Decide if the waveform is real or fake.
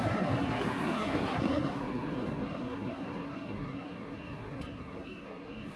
fake